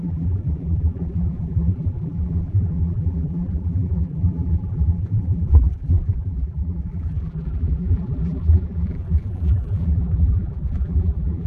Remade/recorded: remade